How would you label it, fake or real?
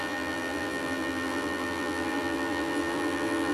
fake